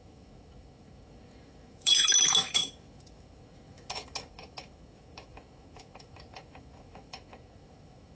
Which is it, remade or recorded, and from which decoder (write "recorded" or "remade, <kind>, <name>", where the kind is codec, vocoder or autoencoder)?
remade, autoencoder, DAC-VAE